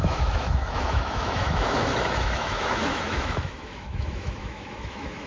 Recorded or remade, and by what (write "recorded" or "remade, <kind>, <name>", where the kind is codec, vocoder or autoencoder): remade, autoencoder, DAC-VAE